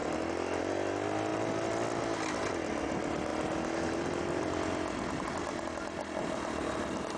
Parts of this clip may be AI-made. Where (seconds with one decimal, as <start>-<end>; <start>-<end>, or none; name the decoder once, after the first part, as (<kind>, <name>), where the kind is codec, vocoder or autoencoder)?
none